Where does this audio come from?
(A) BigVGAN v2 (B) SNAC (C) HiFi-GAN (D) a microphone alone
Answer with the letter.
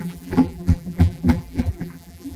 A